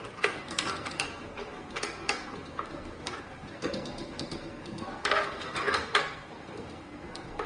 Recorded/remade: remade